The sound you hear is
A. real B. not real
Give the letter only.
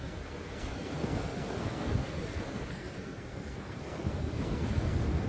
B